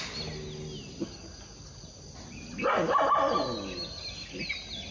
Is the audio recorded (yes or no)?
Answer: yes